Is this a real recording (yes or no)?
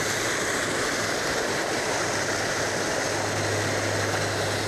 yes